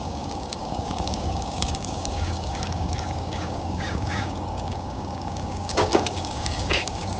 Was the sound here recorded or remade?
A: remade